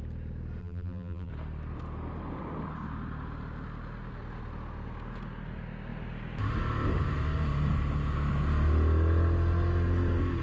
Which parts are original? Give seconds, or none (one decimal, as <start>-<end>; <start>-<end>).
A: 0.0-0.6; 1.3-10.4

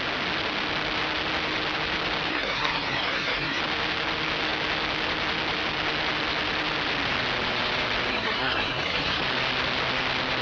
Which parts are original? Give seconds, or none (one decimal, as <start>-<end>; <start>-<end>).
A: 0.0-2.3; 3.6-8.1; 9.2-10.4

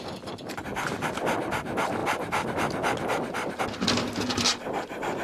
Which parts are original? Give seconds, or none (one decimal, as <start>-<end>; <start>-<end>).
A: 0.0-5.2

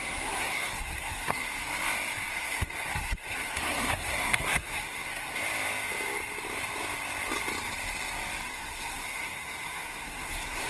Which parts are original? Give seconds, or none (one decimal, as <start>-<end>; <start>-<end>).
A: 1.5-2.3; 5.4-8.5

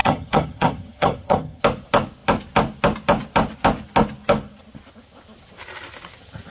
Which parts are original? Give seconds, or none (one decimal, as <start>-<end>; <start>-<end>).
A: 1.6-6.5